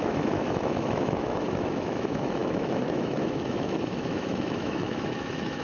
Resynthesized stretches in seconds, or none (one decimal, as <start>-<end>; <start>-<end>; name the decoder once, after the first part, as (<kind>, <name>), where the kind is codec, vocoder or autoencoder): 0.0-5.6 (autoencoder, DAC-VAE)